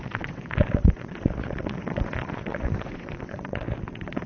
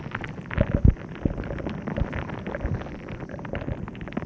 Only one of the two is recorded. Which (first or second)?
second